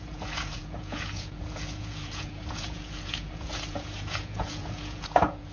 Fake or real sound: fake